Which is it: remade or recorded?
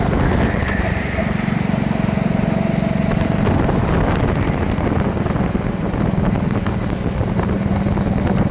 recorded